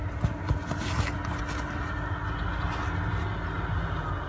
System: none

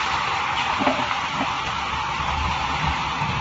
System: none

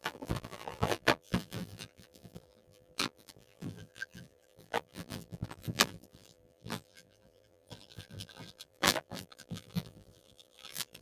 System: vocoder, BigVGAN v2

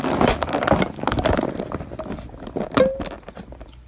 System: none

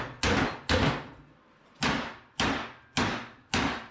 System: none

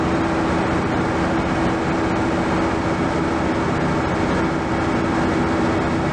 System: none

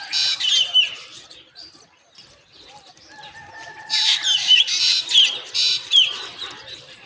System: vocoder, BigVGAN v2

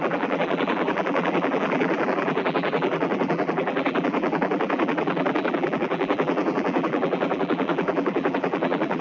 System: vocoder, BigVGAN v2